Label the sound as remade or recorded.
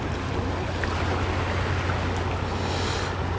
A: recorded